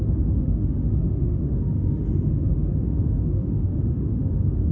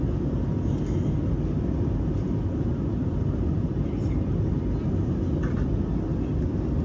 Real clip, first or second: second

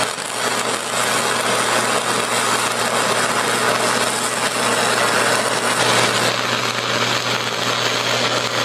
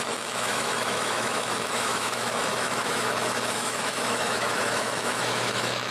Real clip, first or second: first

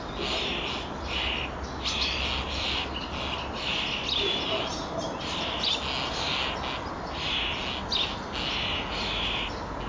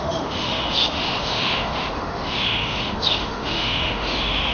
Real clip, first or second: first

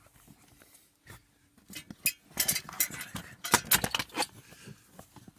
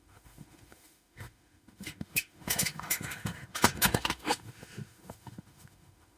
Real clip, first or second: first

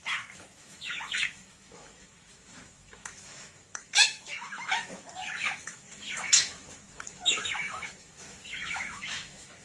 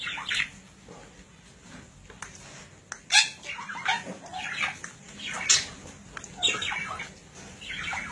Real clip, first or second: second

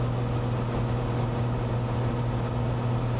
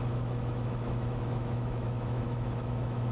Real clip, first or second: first